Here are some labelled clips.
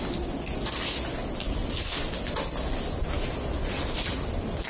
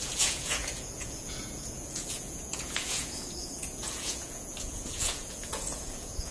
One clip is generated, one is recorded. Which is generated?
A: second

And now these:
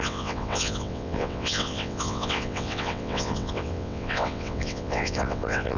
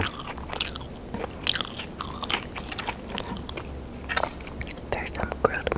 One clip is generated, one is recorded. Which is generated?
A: first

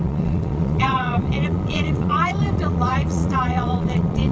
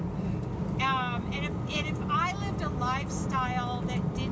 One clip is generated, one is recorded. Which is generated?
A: first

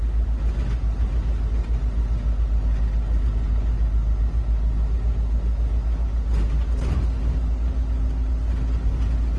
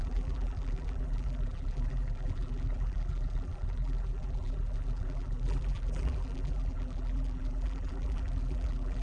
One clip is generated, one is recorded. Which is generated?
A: second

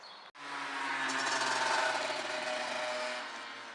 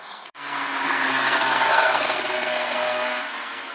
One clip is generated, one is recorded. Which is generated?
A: second